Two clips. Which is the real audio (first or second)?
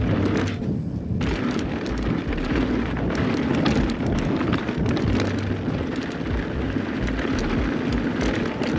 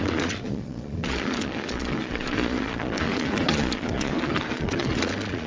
first